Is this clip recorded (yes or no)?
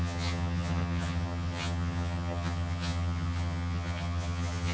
no